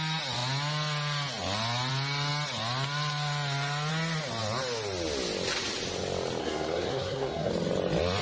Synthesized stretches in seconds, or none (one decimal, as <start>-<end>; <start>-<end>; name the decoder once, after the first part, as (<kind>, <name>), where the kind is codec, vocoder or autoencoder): 6.4-7.5 (codec, SNAC)